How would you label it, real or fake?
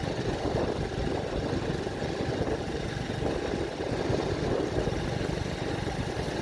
real